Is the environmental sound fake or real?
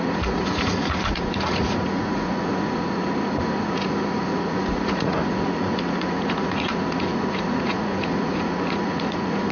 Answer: fake